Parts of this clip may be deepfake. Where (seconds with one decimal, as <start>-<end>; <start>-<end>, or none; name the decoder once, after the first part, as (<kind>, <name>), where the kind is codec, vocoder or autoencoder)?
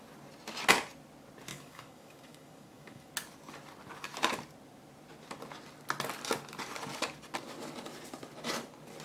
1.5-3.1 (codec, DAC)